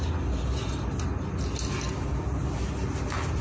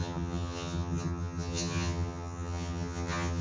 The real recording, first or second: first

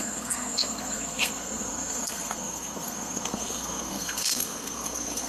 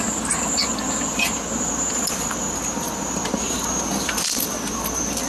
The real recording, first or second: second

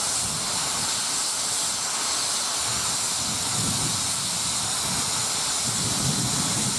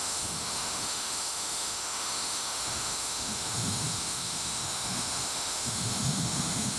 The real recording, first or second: first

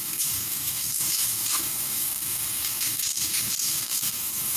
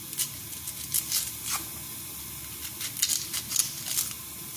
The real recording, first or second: second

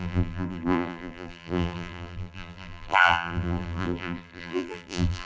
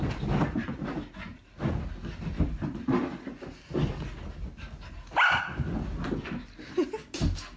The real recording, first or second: second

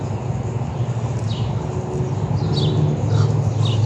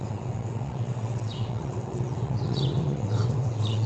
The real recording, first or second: first